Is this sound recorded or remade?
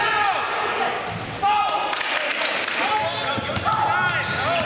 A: recorded